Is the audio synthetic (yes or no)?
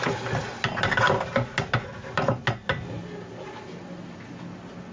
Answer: no